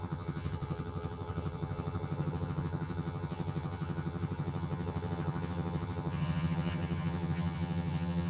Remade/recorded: remade